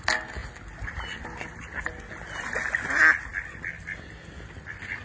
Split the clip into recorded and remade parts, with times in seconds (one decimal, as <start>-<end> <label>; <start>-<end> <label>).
0.0-5.0 recorded